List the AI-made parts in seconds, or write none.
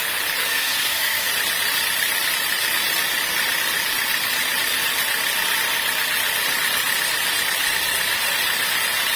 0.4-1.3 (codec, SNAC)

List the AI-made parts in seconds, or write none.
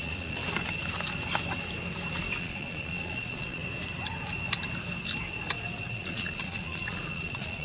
0.0-0.4 (vocoder, Vocos); 2.4-3.6; 5.9-7.6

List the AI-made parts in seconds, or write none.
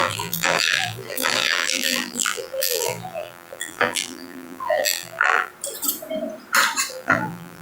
0.0-5.5 (vocoder, BigVGAN v2); 6.9-7.6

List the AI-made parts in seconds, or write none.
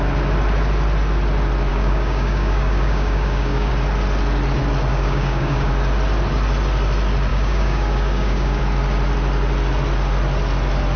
1.7-3.7 (codec, DAC); 4.9-5.7; 7.3-8.6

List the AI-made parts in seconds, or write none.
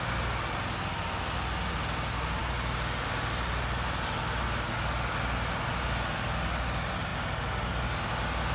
none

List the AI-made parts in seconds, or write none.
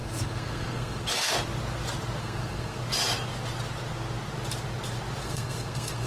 0.0-1.3 (codec, SNAC); 2.2-2.8; 5.2-6.1